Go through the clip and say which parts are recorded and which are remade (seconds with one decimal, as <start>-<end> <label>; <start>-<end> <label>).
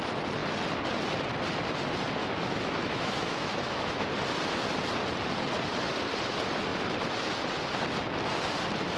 0.0-2.2 recorded; 2.2-4.1 remade; 4.1-9.0 recorded